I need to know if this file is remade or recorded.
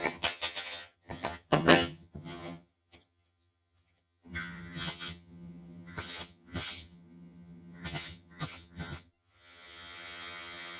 remade